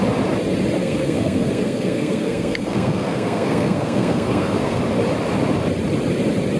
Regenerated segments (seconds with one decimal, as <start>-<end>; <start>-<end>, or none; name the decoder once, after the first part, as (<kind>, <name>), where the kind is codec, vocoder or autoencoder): 0.8-4.8 (codec, SNAC)